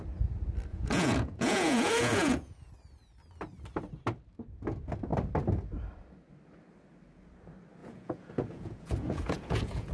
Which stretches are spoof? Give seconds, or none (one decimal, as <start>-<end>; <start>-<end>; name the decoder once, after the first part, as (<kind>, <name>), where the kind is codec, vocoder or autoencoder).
0.7-2.7 (vocoder, Vocos); 7.8-9.9